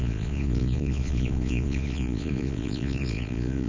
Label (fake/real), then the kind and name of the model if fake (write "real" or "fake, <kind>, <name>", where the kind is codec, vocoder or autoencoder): fake, vocoder, Vocos